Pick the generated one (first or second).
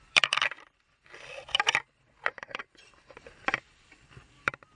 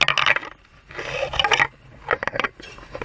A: first